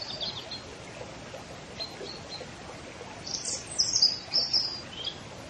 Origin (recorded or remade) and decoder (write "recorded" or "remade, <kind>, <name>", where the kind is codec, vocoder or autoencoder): recorded